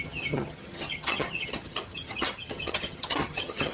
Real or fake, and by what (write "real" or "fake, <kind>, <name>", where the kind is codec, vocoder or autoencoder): fake, vocoder, HiFi-GAN